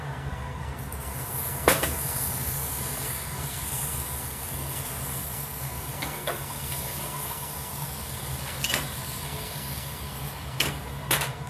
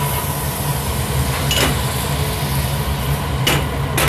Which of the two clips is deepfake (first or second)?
first